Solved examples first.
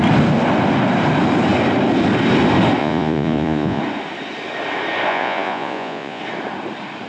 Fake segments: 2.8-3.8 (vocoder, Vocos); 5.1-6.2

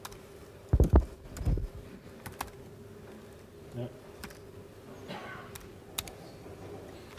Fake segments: none

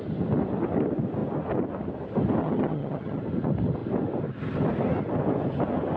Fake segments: 2.4-3.2 (vocoder, HiFi-GAN)